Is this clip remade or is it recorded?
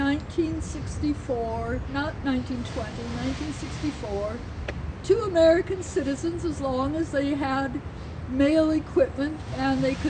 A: recorded